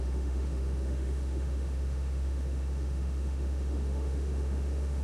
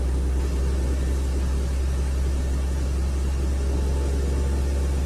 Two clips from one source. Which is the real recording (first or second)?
second